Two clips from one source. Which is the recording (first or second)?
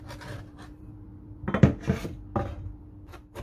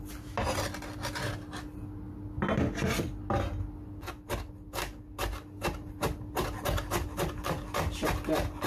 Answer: second